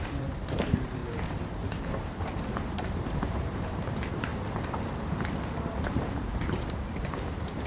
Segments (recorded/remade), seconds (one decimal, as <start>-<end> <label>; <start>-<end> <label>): 0.0-1.0 remade; 1.0-2.2 recorded; 2.2-4.3 remade; 4.3-6.0 recorded; 6.0-7.7 remade